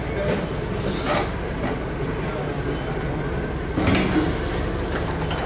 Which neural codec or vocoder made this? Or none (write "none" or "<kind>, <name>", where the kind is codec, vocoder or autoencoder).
none